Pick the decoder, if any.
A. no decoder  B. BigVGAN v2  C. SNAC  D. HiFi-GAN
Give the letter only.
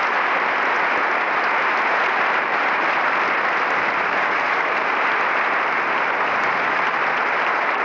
A